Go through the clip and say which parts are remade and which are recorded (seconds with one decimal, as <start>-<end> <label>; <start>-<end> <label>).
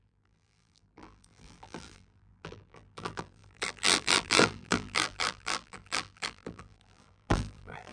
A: 0.0-7.9 remade